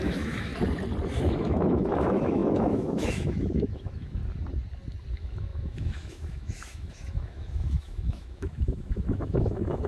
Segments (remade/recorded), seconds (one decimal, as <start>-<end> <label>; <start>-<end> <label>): 0.0-0.5 remade; 0.5-1.2 recorded; 1.2-4.2 remade; 4.2-5.1 recorded; 5.1-9.9 remade